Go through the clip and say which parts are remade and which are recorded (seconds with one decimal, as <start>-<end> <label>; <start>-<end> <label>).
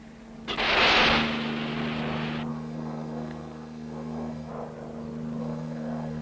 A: 0.0-2.5 recorded; 2.5-4.5 remade; 4.5-5.4 recorded; 5.4-6.2 remade